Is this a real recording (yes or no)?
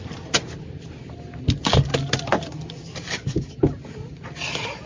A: yes